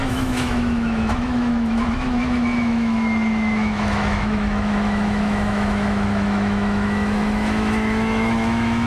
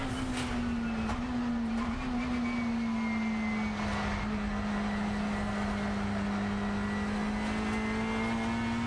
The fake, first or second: first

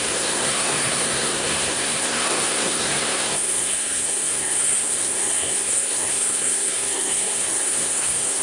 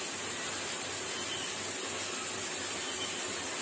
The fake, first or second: first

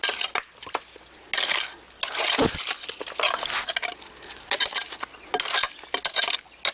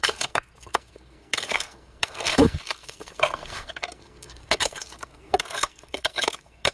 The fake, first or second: second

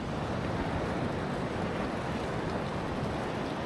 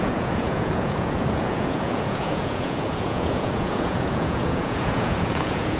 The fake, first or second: second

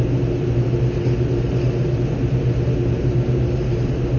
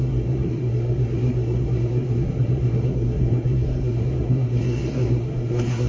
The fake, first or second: second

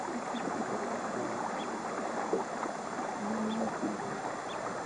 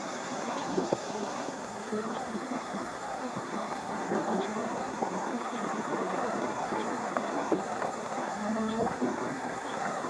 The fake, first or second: second